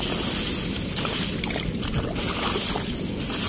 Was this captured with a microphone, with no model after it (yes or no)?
yes